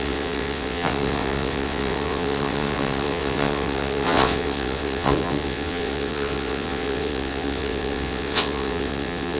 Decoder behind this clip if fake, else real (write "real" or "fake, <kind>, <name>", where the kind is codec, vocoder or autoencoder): fake, vocoder, WaveNeXt